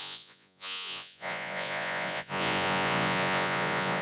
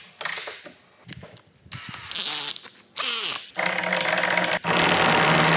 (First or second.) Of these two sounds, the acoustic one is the second